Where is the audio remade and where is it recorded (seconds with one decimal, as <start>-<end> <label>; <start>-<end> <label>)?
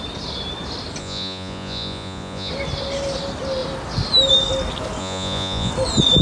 0.0-1.0 recorded; 1.0-2.5 remade; 2.5-5.0 recorded; 5.0-5.7 remade; 5.7-6.2 recorded